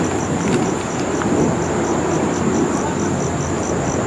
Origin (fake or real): real